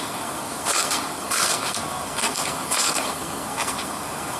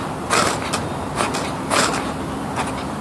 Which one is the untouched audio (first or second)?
second